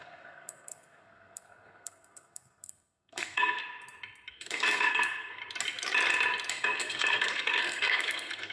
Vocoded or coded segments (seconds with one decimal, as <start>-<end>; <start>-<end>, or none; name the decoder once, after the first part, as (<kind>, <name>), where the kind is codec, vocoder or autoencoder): 0.0-3.6 (codec, SNAC); 4.3-5.4; 6.5-8.5